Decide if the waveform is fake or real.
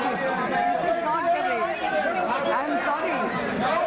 real